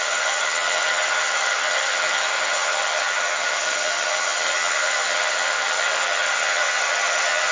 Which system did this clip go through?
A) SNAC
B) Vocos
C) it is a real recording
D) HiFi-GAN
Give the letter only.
D